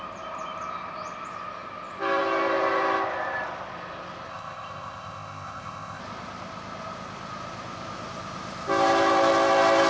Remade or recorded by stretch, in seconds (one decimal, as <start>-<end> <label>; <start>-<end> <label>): 0.0-4.3 recorded; 4.3-6.0 remade; 6.0-9.9 recorded